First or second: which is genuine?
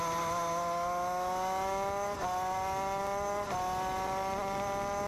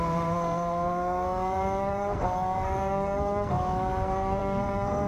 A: first